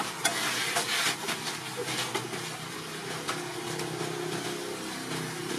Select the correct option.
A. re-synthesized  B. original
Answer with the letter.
B